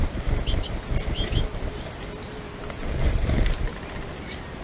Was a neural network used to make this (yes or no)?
no